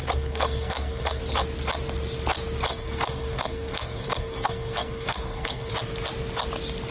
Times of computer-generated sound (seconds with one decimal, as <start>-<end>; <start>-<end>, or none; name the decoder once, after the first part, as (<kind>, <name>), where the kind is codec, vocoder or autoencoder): 0.0-1.2 (codec, SNAC); 2.7-5.7